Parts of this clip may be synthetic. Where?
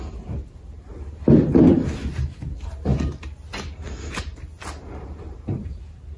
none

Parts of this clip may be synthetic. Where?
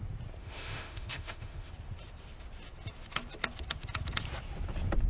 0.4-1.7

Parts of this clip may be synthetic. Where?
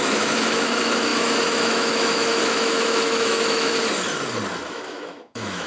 0.0-3.7; 4.7-5.7